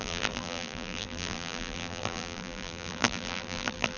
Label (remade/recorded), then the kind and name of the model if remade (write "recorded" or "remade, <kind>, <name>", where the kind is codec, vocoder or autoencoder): remade, vocoder, BigVGAN v2